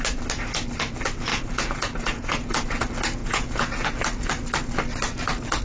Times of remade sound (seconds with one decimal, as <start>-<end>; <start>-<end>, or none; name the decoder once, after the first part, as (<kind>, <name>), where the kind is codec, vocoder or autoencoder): 1.3-2.5 (vocoder, Vocos); 3.2-3.9